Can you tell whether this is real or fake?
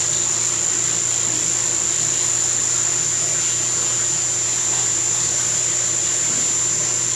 real